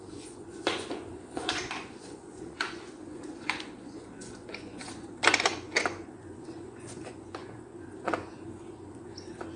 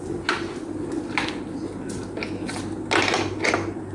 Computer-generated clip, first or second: first